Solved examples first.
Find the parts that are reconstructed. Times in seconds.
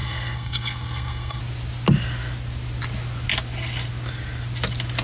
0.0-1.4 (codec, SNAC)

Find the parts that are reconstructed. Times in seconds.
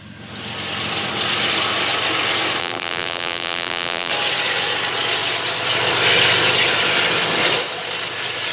2.6-4.1 (vocoder, BigVGAN v2)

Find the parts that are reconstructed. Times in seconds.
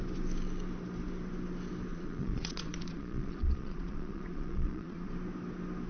1.9-5.1 (vocoder, Vocos)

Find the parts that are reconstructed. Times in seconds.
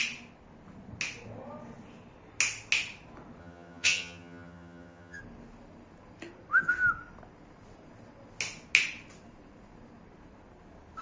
3.4-5.2 (vocoder, HiFi-GAN)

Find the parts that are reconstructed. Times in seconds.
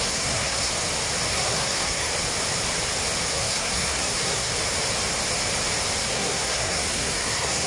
0.0-0.7 (codec, SNAC); 1.3-2.1; 3.3-4.5; 6.0-7.7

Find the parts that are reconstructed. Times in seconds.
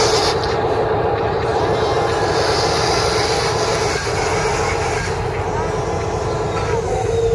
none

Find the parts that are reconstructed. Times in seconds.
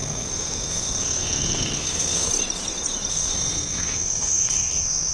0.0-2.3 (codec, SNAC); 3.1-5.1